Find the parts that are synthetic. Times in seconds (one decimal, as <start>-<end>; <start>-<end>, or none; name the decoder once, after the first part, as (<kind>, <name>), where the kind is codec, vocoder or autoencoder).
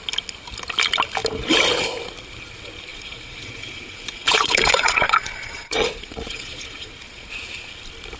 2.9-7.4 (vocoder, Vocos)